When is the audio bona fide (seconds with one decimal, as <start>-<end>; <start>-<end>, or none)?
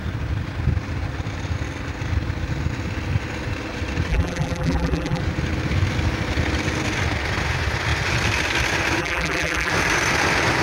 0.0-4.1; 5.2-9.0; 9.7-10.6